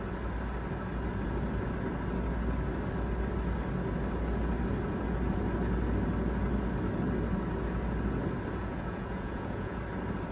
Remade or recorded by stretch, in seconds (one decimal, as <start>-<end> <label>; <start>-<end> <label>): 0.0-8.6 recorded; 8.6-9.8 remade; 9.8-10.3 recorded